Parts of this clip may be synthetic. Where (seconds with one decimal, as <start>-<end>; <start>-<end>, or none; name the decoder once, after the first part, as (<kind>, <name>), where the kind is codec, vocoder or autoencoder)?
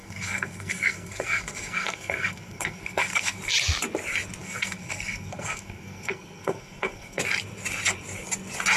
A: 0.0-3.4 (codec, SNAC); 4.4-7.2